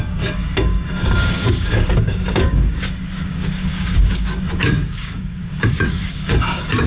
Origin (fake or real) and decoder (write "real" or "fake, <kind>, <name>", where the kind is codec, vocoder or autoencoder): fake, codec, DAC